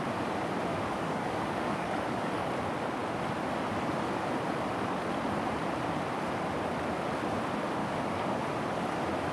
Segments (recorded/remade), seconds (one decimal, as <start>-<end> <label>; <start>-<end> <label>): 0.0-0.7 recorded; 0.7-2.5 remade; 2.5-7.8 recorded; 7.8-8.4 remade; 8.4-9.3 recorded